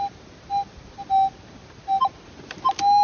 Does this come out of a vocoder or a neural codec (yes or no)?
no